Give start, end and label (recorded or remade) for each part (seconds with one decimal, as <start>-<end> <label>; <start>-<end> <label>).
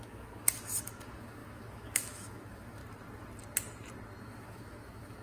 0.0-2.8 remade; 2.8-4.2 recorded; 4.2-5.2 remade